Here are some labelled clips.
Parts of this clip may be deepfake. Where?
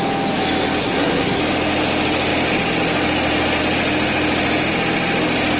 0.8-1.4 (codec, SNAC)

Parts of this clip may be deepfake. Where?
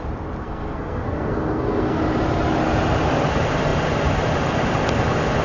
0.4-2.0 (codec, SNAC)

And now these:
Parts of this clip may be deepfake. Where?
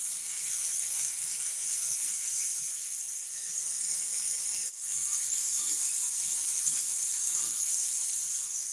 0.0-8.7 (codec, SNAC)